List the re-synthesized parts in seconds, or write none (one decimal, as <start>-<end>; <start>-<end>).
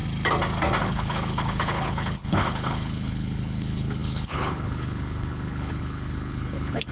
0.8-6.9